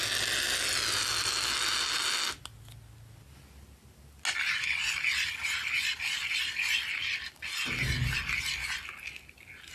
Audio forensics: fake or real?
real